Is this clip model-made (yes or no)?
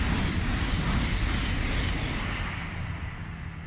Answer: no